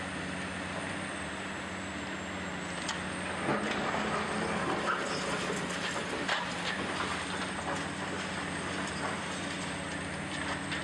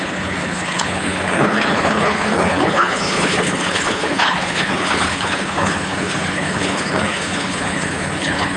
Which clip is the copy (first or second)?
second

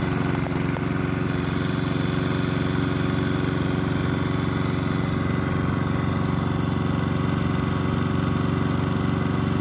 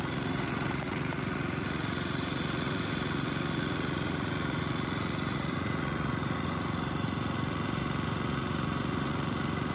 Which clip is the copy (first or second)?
second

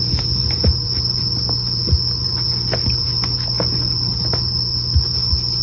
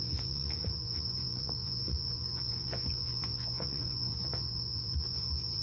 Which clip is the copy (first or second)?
second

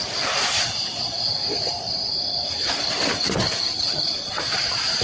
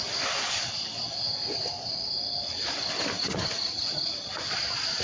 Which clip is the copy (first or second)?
first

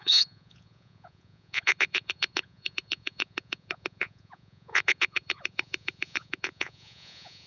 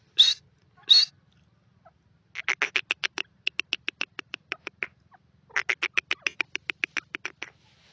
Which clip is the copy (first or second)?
first